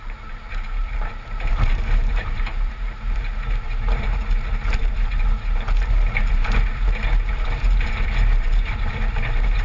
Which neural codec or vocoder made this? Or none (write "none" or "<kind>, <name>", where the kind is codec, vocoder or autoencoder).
vocoder, BigVGAN v2